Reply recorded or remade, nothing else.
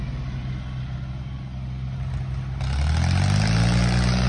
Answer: recorded